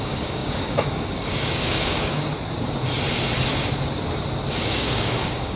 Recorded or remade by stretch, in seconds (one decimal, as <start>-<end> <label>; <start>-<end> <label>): 0.0-2.3 remade; 2.3-4.5 recorded; 4.5-5.6 remade